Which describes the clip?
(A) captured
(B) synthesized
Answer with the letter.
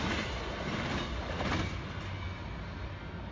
A